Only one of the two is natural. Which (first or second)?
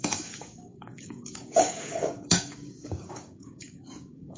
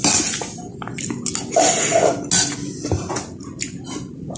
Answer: second